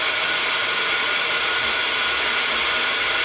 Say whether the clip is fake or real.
real